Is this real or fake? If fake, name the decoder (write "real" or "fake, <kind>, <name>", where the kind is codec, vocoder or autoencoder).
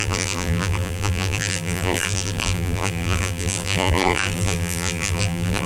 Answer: fake, vocoder, BigVGAN v2